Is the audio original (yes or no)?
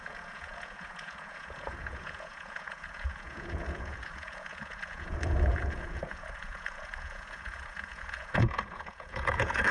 no